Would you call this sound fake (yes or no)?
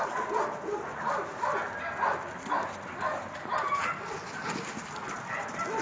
no